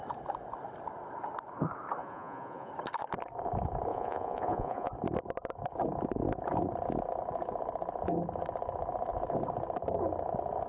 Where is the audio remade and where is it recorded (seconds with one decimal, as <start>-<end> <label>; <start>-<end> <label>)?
0.0-2.0 recorded; 2.0-2.7 remade; 2.7-3.9 recorded; 3.9-4.9 remade; 4.9-10.7 recorded